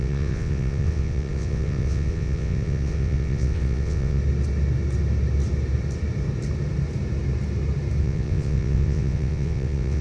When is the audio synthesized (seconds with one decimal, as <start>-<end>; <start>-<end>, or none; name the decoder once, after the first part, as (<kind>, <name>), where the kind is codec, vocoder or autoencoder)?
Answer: 0.0-4.2 (vocoder, WaveNeXt); 8.0-10.0